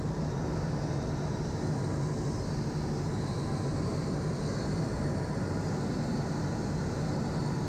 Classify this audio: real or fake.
real